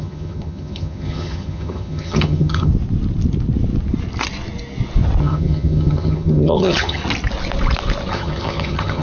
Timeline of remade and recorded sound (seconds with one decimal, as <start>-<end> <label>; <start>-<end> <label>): 0.0-2.7 remade; 2.7-5.2 recorded; 5.2-7.0 remade; 7.0-8.1 recorded; 8.1-9.0 remade